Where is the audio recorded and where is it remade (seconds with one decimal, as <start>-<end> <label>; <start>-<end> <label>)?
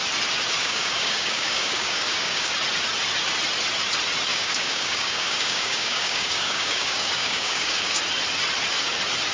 0.0-0.6 recorded; 0.6-2.5 remade; 2.5-4.3 recorded; 4.3-8.0 remade; 8.0-9.3 recorded